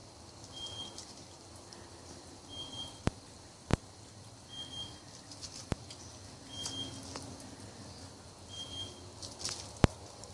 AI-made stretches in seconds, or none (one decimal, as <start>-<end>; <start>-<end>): none